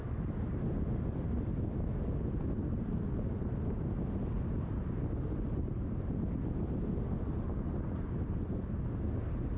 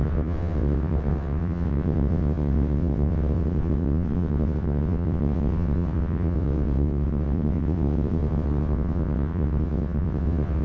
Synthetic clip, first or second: second